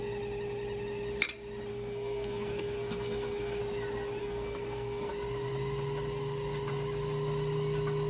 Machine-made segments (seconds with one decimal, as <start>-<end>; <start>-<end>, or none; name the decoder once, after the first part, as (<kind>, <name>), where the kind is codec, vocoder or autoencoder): 1.7-3.6 (codec, SNAC); 4.2-5.1